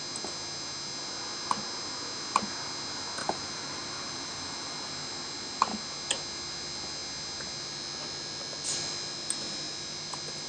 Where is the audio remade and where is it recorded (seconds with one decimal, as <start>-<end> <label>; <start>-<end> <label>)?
0.0-3.2 recorded; 3.2-4.9 remade; 4.9-10.5 recorded